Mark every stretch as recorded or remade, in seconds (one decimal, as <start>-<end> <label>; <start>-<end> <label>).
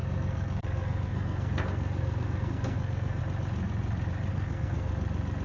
0.0-3.2 remade; 3.2-4.3 recorded; 4.3-4.9 remade; 4.9-5.4 recorded